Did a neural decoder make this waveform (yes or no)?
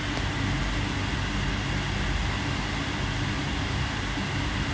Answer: no